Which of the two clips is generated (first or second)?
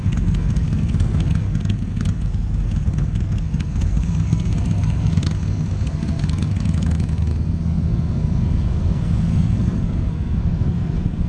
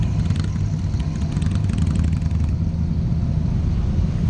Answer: first